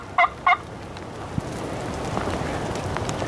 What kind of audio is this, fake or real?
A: real